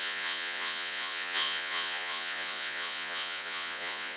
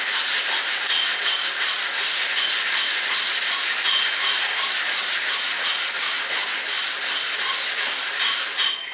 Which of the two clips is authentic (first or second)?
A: second